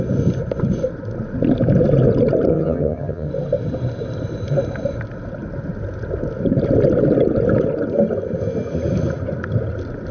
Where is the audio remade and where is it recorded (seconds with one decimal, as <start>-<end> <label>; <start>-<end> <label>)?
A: 0.0-2.5 recorded; 2.5-3.3 remade; 3.3-10.1 recorded